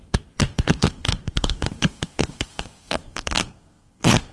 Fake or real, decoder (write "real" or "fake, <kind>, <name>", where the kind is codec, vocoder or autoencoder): fake, codec, SNAC